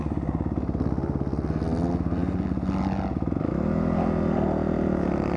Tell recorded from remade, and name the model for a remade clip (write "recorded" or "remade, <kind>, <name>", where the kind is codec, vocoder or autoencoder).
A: recorded